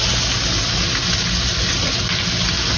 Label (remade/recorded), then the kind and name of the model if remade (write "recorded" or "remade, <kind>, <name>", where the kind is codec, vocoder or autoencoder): recorded